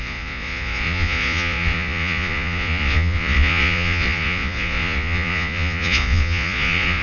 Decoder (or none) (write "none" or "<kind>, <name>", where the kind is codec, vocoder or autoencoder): vocoder, Vocos